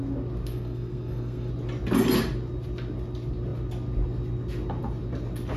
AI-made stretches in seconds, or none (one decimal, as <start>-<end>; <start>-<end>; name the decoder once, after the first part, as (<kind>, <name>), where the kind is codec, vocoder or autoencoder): 0.5-1.5 (codec, SNAC)